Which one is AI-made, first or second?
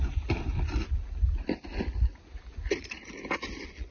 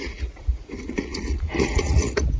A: second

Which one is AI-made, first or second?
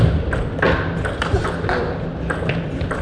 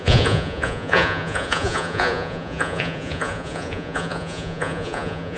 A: second